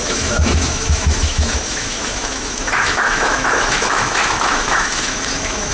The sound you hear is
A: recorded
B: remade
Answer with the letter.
B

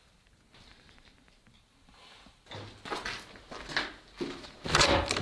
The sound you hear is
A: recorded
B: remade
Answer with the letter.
A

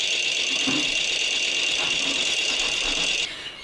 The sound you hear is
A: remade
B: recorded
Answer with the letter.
B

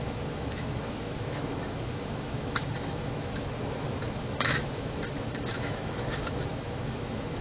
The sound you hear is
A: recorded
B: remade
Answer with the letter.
B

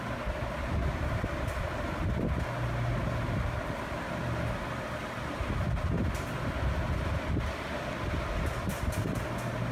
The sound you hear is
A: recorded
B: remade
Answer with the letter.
A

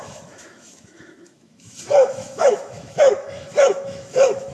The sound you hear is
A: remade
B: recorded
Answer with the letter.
A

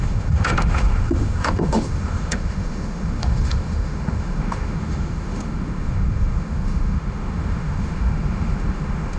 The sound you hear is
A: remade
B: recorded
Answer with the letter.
A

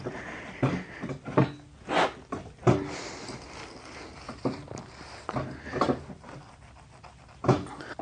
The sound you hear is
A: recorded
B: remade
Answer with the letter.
A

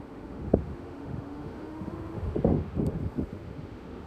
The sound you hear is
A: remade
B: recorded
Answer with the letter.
A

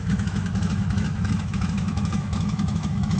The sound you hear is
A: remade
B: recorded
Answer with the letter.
A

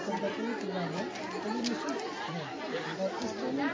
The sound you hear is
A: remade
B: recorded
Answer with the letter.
B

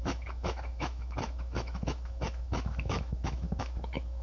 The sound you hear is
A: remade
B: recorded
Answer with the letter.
A